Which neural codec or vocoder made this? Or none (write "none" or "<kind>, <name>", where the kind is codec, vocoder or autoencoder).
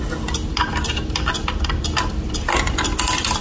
none